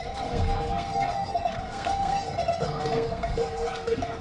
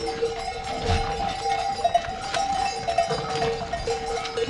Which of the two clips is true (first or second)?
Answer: second